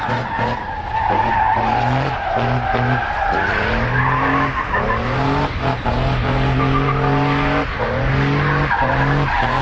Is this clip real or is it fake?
real